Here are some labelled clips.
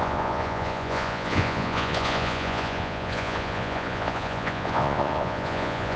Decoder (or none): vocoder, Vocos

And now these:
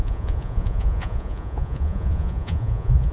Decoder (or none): vocoder, Vocos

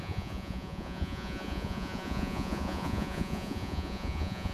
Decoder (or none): vocoder, Vocos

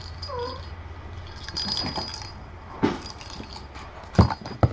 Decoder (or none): none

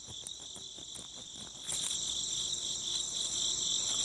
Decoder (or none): none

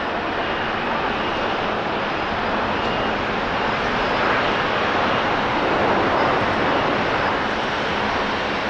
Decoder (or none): none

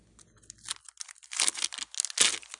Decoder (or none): none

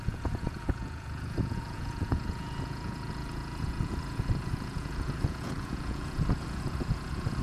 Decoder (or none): vocoder, Vocos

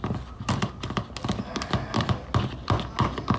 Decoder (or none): none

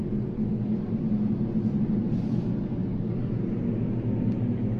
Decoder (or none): none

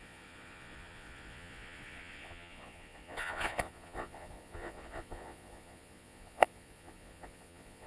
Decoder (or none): vocoder, Vocos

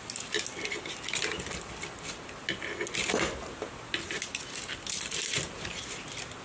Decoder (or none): none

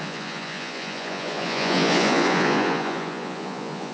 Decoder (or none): vocoder, Vocos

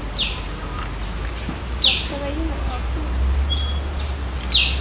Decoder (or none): none